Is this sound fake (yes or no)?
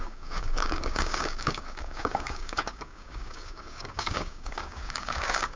yes